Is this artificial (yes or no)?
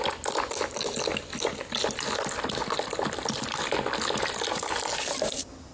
no